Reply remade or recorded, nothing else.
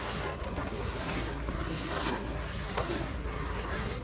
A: remade